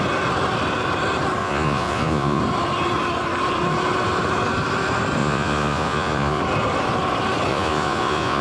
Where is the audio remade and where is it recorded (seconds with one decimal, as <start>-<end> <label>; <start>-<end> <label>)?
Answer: 0.0-1.4 recorded; 1.4-2.4 remade; 2.4-5.2 recorded; 5.2-6.4 remade; 6.4-7.5 recorded; 7.5-8.4 remade